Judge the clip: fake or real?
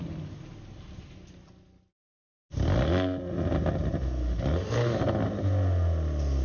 real